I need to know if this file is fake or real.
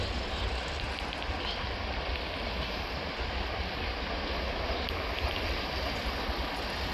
real